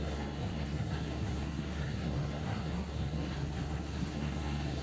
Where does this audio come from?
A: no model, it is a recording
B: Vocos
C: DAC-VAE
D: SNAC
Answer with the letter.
D